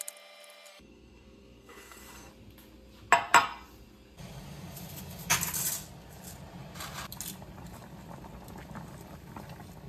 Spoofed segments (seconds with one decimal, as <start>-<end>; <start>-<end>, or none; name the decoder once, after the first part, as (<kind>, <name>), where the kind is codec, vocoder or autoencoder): 0.7-2.3 (codec, SNAC)